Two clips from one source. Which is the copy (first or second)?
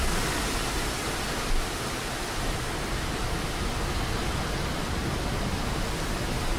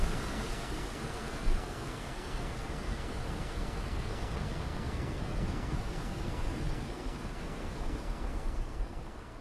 second